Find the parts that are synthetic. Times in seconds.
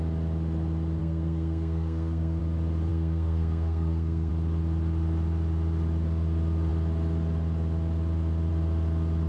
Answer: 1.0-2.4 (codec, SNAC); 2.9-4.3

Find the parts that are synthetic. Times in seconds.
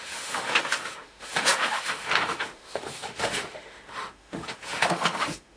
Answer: 0.0-5.6 (autoencoder, DAC-VAE)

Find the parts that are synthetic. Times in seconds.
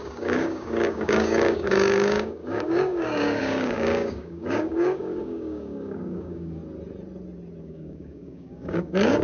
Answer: 0.0-6.6 (codec, DAC); 7.6-9.2